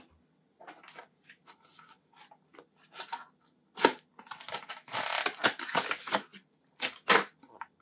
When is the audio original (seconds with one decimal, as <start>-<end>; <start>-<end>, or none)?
0.0-7.8